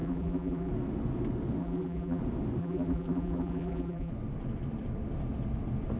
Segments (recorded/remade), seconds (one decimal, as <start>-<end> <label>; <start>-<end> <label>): 0.0-0.7 remade; 0.7-1.6 recorded; 1.6-2.2 remade; 2.2-2.6 recorded; 2.6-4.1 remade; 4.1-6.0 recorded